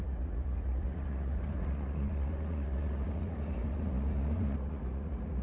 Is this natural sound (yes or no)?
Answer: no